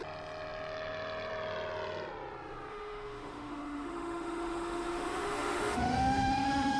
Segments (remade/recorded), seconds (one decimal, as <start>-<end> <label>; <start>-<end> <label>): 0.0-2.7 recorded; 2.7-6.8 remade

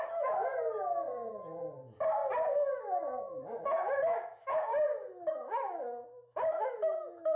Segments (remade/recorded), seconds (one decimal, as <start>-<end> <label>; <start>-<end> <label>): 0.0-0.5 remade; 0.5-1.3 recorded; 1.3-2.2 remade; 2.2-2.8 recorded; 2.8-4.7 remade; 4.7-5.3 recorded; 5.3-7.4 remade

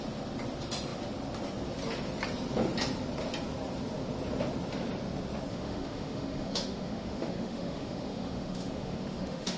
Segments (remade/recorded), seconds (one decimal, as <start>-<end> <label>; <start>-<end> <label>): 0.0-5.5 recorded; 5.5-9.6 remade

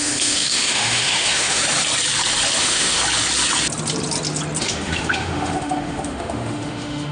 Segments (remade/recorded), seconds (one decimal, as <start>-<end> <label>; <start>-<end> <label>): 0.0-1.6 remade; 1.6-2.6 recorded; 2.6-3.0 remade; 3.0-4.6 recorded; 4.6-7.1 remade

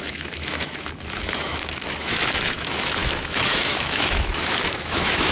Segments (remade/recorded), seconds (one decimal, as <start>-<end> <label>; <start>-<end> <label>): 0.0-5.3 remade